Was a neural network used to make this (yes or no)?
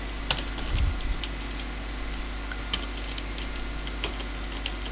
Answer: no